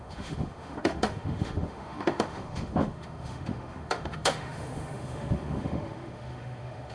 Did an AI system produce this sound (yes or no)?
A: yes